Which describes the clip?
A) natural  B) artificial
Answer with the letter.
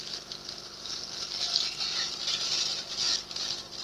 A